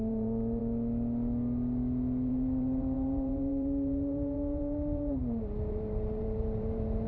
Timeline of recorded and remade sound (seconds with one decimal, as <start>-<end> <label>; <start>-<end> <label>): 0.0-0.6 remade; 0.6-2.3 recorded; 2.3-5.2 remade; 5.2-5.7 recorded; 5.7-7.1 remade